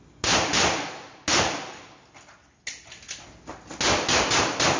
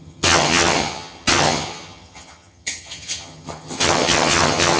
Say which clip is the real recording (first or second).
first